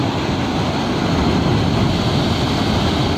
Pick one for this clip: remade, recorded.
recorded